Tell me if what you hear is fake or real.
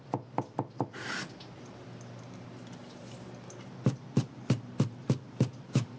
real